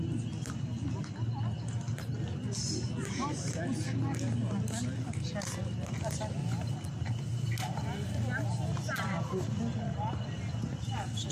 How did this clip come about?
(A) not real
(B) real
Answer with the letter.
B